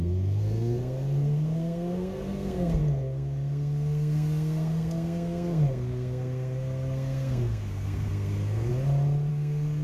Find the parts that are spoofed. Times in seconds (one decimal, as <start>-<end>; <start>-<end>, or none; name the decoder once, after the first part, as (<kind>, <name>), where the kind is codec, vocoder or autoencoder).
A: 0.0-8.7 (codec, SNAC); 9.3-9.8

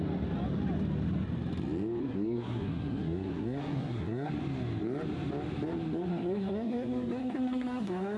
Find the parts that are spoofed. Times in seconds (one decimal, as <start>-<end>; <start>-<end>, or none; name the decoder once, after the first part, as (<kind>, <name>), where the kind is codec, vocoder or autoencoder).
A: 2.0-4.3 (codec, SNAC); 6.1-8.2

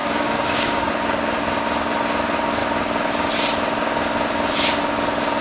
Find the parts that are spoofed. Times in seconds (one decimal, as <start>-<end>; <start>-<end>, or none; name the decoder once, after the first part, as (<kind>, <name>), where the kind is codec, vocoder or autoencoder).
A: 0.0-0.9 (codec, DAC)

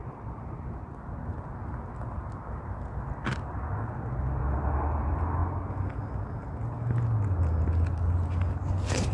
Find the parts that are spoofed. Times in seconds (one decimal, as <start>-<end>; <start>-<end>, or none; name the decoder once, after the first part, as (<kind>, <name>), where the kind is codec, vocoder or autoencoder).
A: none

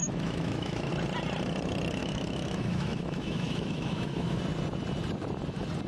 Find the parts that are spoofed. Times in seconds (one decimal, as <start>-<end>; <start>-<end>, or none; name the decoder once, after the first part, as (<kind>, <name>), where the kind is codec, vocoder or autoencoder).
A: 0.0-0.9 (autoencoder, DAC-VAE); 2.0-4.4